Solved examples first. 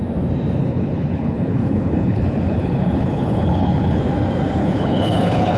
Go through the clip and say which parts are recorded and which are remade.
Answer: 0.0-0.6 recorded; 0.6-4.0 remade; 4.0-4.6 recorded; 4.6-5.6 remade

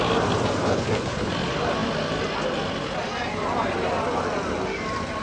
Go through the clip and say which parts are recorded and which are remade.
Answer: 0.0-0.6 recorded; 0.6-1.3 remade; 1.3-5.2 recorded

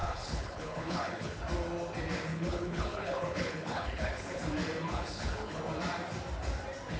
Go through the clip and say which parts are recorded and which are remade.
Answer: 0.0-1.4 remade; 1.4-2.3 recorded; 2.3-4.4 remade; 4.4-4.9 recorded; 4.9-5.6 remade; 5.6-7.0 recorded